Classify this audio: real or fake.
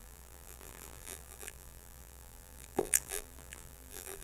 fake